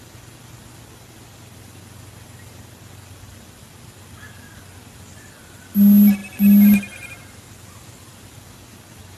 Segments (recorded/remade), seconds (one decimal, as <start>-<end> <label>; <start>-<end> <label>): 0.0-9.2 recorded